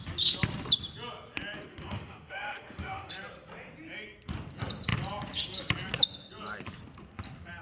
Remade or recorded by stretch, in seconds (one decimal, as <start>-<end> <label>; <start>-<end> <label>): 0.0-1.7 recorded; 1.7-3.1 remade; 3.1-7.6 recorded